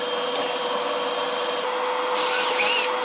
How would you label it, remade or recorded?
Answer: recorded